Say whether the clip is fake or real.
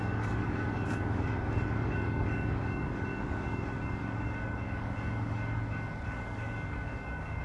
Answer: fake